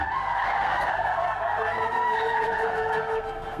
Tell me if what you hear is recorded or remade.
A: remade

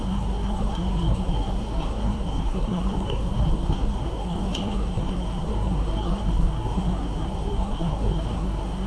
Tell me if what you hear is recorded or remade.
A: remade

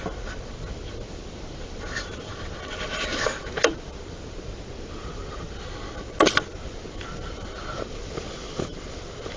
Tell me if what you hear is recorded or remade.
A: recorded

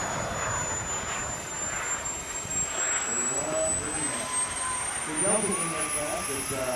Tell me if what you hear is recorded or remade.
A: recorded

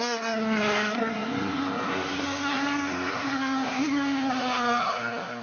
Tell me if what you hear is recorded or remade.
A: remade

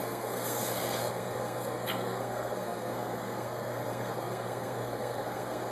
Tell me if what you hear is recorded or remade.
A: remade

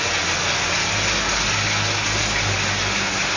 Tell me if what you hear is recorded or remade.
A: recorded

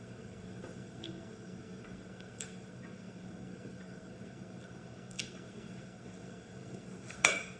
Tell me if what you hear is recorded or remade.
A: remade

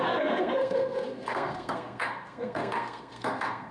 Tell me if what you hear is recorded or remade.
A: remade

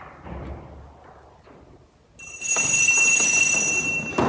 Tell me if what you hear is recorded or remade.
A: recorded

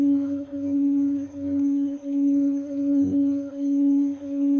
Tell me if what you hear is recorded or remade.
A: remade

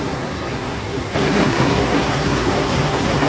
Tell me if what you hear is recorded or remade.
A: remade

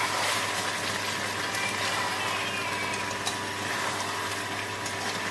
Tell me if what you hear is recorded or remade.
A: recorded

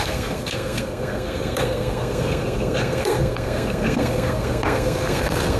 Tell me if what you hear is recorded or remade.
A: remade